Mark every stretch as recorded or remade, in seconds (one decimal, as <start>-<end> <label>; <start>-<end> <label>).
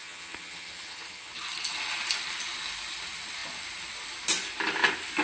0.0-1.3 remade; 1.3-5.2 recorded